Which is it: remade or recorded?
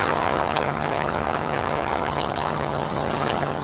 remade